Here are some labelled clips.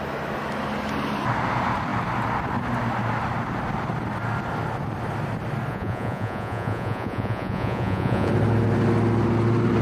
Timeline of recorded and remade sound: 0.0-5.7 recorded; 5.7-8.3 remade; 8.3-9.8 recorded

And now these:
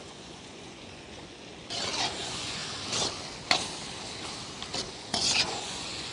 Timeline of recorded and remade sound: 0.0-1.5 remade; 1.5-2.2 recorded; 2.2-2.6 remade; 2.6-4.9 recorded; 4.9-6.1 remade